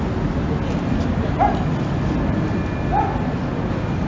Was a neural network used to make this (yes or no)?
no